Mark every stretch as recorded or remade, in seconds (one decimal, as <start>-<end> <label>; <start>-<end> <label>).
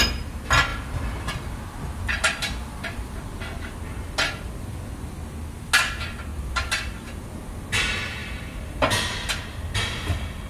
0.0-0.7 recorded; 0.7-4.8 remade; 4.8-6.3 recorded; 6.3-7.0 remade; 7.0-8.2 recorded; 8.2-9.4 remade; 9.4-10.5 recorded